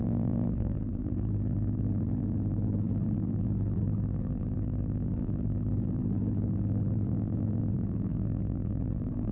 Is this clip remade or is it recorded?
remade